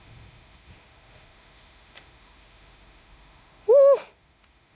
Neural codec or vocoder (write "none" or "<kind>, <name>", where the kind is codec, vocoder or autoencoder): autoencoder, DAC-VAE